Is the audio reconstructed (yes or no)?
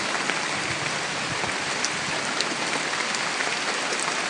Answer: no